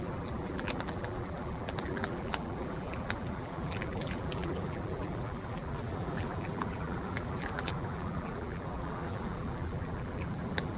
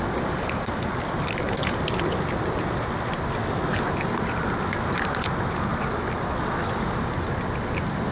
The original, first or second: second